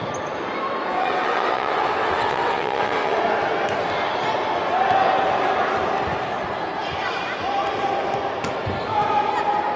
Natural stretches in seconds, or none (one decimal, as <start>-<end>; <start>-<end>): 0.0-0.9; 3.2-9.8